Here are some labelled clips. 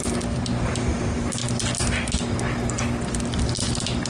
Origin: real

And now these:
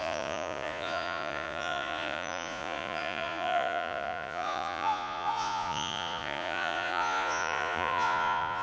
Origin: fake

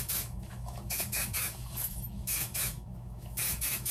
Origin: fake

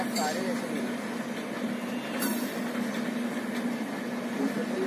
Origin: real